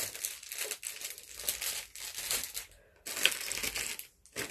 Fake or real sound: real